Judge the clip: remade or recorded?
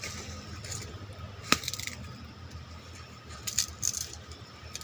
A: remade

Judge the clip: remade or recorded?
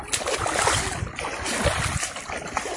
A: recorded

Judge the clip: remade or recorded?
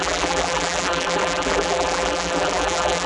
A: remade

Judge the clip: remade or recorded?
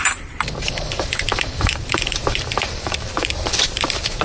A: remade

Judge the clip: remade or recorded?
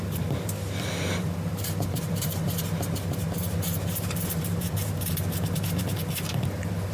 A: remade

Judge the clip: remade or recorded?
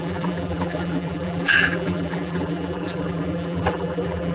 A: remade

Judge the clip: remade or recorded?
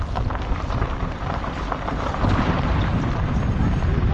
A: remade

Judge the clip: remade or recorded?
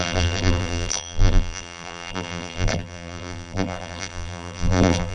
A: remade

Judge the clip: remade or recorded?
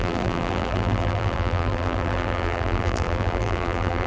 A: remade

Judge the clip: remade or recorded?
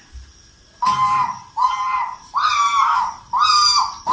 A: remade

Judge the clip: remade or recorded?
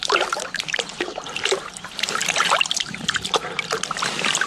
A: remade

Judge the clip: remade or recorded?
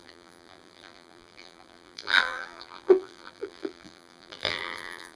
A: remade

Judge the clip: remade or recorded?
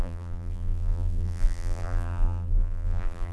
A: remade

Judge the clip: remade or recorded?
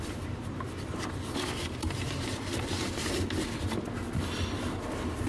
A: remade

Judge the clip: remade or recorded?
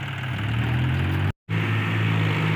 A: recorded